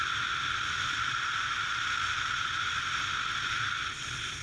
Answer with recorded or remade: recorded